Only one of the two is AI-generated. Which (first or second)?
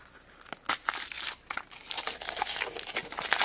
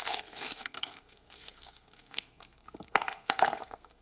second